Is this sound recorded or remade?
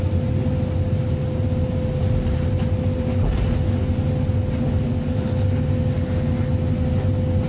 recorded